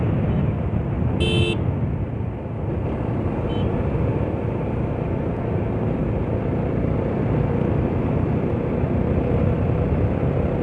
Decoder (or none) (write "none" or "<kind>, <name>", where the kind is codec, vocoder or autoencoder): none